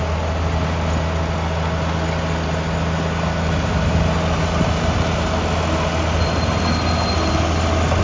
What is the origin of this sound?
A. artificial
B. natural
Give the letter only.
B